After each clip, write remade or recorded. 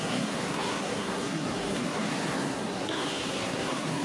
remade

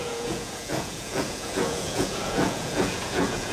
remade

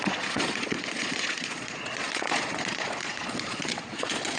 remade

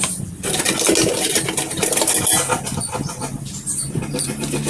recorded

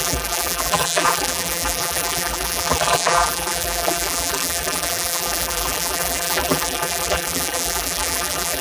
remade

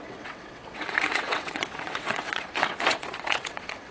remade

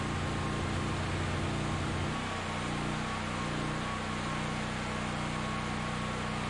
recorded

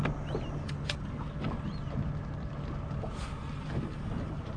recorded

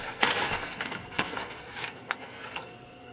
remade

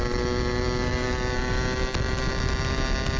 recorded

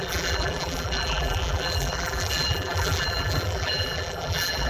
remade